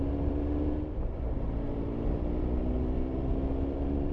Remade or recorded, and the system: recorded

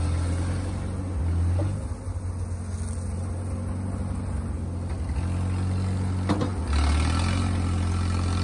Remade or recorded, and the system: recorded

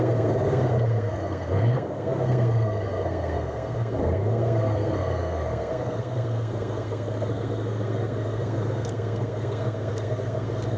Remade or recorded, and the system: remade, codec, SNAC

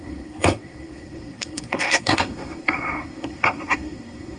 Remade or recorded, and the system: remade, codec, SNAC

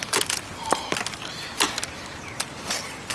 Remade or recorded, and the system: recorded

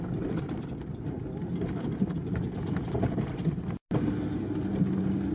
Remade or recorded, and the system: recorded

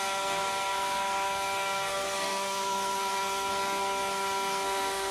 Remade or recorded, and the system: remade, codec, SNAC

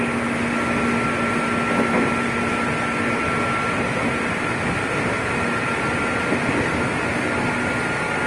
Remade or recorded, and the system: recorded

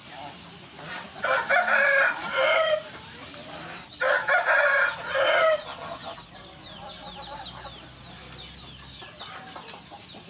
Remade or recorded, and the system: recorded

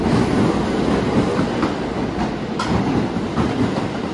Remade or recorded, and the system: recorded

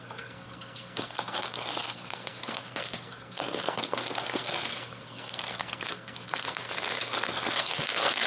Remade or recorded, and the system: remade, codec, SNAC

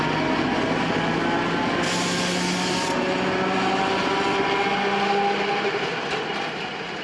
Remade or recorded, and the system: recorded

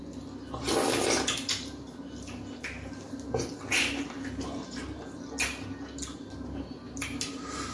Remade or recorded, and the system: recorded